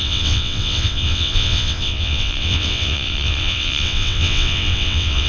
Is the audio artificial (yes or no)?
yes